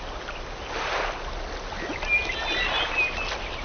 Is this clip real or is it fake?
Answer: real